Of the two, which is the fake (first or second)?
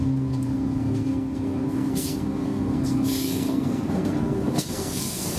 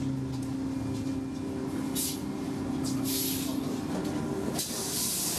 first